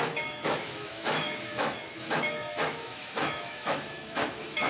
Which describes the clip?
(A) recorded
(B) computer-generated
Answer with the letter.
B